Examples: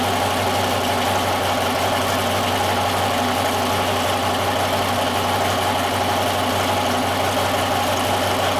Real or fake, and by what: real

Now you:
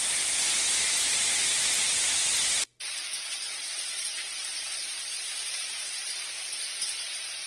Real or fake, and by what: real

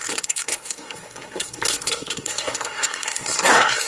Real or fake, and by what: fake, codec, SNAC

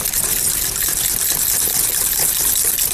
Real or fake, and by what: real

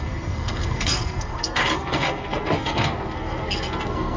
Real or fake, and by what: fake, codec, SNAC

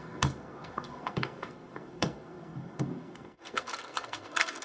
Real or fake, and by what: fake, codec, SNAC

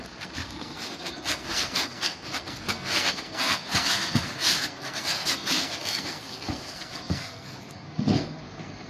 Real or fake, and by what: fake, codec, SNAC